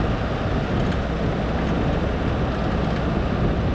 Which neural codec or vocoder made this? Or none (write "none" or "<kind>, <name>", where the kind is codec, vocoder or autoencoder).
none